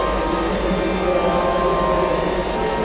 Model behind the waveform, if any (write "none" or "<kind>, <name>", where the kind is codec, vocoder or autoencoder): none